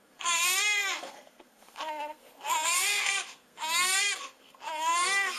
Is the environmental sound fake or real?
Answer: fake